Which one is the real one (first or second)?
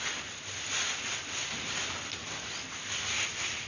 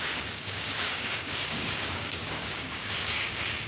first